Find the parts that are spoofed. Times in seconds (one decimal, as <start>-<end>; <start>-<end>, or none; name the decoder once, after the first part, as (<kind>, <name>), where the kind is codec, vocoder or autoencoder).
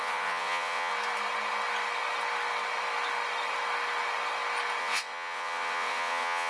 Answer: 0.0-0.9 (vocoder, WaveNeXt); 4.8-6.5